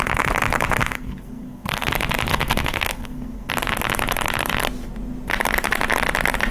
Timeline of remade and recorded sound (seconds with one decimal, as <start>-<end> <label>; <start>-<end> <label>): 0.0-0.8 recorded; 0.8-1.9 remade; 1.9-2.3 recorded; 2.3-3.5 remade; 3.5-6.5 recorded